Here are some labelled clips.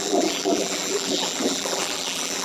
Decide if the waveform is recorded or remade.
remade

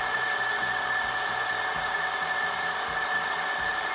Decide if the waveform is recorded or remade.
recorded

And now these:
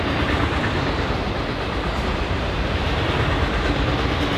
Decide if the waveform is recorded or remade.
recorded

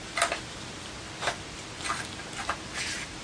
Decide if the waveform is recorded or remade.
recorded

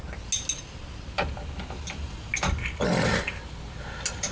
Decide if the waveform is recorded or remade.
recorded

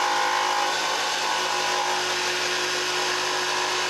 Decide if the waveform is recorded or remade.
recorded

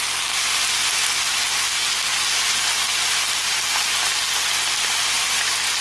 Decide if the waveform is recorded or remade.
recorded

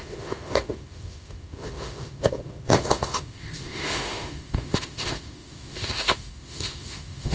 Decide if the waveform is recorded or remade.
remade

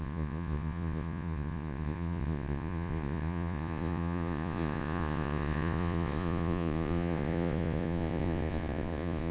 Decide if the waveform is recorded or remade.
remade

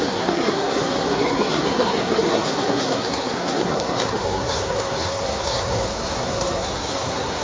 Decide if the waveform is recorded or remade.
remade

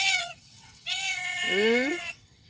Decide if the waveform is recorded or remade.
remade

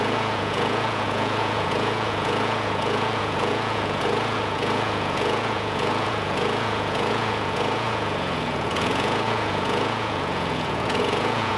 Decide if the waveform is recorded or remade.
remade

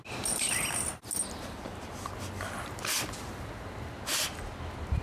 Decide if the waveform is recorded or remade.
recorded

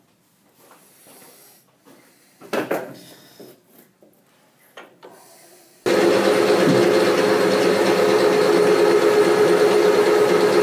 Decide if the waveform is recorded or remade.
recorded